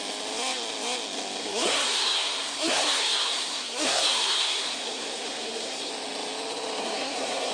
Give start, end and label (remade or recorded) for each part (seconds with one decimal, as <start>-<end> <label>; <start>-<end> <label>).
0.0-1.4 recorded; 1.4-5.9 remade; 5.9-6.8 recorded; 6.8-7.5 remade